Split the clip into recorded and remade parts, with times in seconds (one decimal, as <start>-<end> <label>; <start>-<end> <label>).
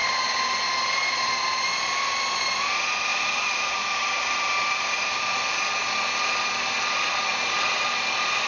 0.0-0.6 remade; 0.6-3.1 recorded; 3.1-5.2 remade; 5.2-8.5 recorded